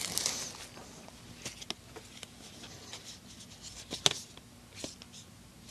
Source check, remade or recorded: recorded